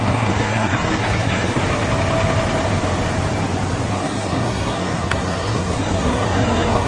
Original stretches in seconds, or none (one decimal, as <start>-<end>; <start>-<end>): 1.6-3.9